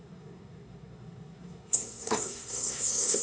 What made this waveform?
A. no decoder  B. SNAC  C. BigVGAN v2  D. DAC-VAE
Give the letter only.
B